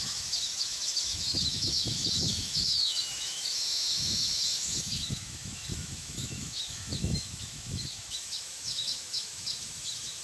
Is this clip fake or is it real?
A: fake